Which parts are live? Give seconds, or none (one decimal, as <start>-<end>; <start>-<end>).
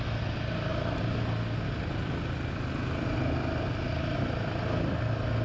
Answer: 0.0-5.4